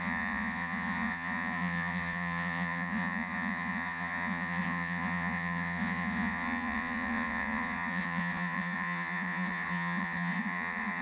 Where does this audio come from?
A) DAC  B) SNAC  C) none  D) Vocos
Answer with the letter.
D